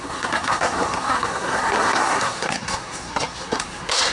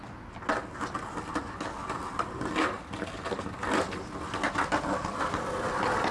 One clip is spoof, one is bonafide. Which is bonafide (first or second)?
second